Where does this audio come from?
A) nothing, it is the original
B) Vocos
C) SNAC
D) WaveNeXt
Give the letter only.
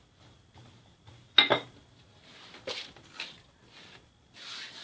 A